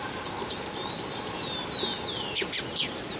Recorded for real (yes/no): yes